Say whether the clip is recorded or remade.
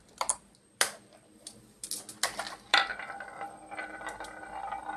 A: remade